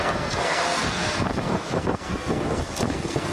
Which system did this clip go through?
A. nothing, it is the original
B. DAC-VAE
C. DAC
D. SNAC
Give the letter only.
D